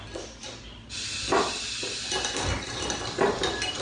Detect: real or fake real